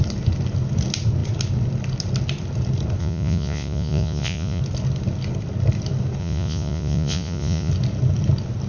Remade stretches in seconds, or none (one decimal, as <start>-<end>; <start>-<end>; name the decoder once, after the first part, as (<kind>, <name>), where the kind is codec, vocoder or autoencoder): 3.0-4.6 (vocoder, Vocos); 6.2-7.7